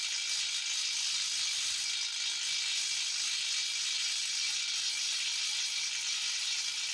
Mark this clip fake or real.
real